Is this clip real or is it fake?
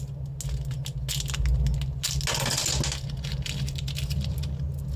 real